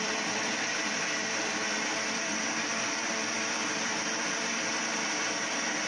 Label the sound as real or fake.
fake